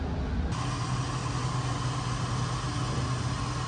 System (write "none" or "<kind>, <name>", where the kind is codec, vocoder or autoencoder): none